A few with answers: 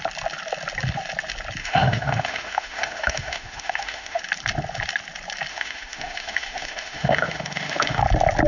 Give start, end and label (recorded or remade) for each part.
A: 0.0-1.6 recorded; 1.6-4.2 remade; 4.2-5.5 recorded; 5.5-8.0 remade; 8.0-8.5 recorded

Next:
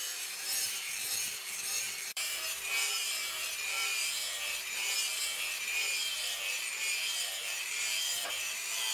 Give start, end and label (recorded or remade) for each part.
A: 0.0-8.9 remade

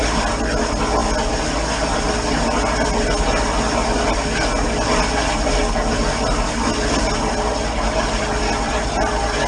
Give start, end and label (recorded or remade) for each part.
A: 0.0-9.5 recorded

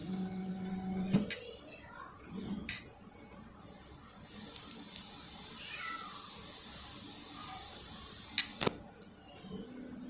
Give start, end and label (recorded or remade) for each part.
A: 0.0-7.4 recorded; 7.4-8.1 remade; 8.1-10.1 recorded